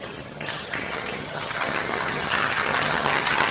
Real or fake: fake